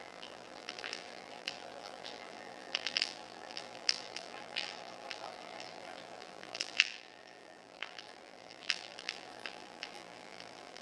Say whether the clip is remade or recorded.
remade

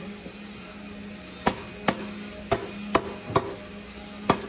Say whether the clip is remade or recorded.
recorded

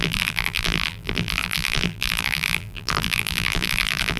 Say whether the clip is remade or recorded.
remade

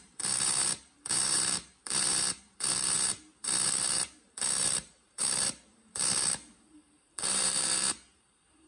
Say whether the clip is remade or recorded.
remade